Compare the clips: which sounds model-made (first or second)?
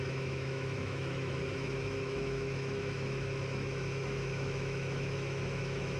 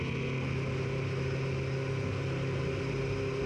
first